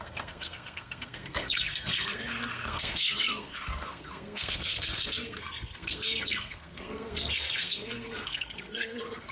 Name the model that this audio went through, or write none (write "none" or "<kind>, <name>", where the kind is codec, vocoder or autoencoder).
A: codec, SNAC